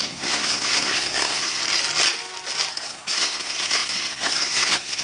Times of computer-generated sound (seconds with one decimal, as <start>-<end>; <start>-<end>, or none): 0.0-1.6; 2.7-5.0

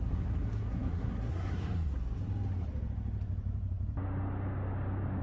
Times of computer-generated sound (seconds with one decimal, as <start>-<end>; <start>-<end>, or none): 0.0-1.9